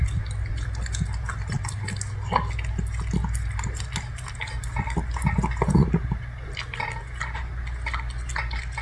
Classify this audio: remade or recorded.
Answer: recorded